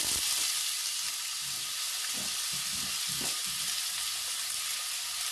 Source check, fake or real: real